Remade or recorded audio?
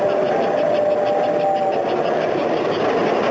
recorded